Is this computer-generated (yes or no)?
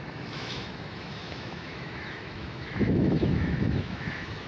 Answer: yes